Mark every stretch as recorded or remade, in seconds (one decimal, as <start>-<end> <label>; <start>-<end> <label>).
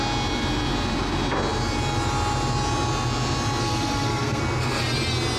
0.0-3.6 recorded; 3.6-4.4 remade; 4.4-5.4 recorded